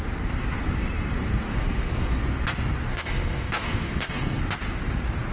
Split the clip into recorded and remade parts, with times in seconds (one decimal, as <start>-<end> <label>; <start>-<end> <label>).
0.0-1.5 recorded; 1.5-2.2 remade; 2.2-2.9 recorded; 2.9-4.4 remade; 4.4-5.3 recorded